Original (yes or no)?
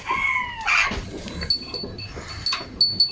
yes